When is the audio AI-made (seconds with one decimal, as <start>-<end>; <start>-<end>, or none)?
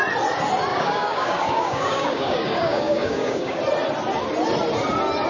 0.7-3.6